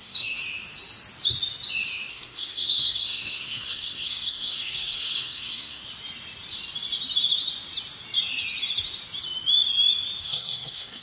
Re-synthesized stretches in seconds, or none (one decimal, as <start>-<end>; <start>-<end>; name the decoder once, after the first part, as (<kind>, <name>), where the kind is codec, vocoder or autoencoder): 0.0-0.4 (codec, SNAC); 2.1-5.8; 10.2-11.0